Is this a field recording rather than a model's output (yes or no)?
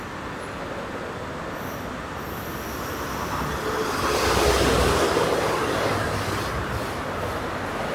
yes